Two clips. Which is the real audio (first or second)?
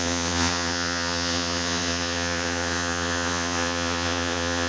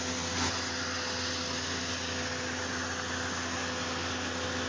second